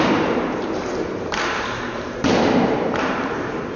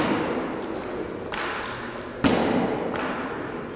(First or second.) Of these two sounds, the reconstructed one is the first